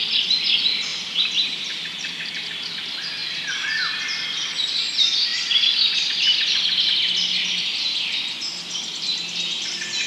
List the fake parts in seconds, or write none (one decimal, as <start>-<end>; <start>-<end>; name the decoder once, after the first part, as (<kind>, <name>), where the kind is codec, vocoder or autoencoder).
0.9-2.4 (vocoder, BigVGAN v2); 3.2-4.0; 8.9-9.7